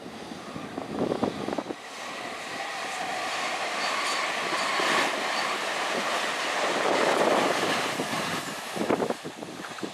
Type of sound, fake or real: real